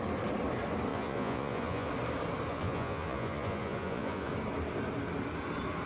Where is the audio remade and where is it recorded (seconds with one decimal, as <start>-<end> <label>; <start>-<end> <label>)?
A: 0.0-0.9 recorded; 0.9-1.9 remade; 1.9-2.5 recorded; 2.5-4.3 remade; 4.3-5.9 recorded